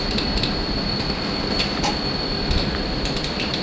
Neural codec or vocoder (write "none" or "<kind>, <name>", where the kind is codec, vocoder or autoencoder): none